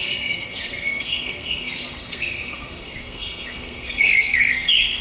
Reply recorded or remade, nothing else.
remade